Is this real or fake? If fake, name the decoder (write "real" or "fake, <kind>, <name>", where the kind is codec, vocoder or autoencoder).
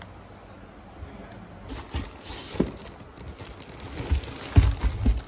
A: real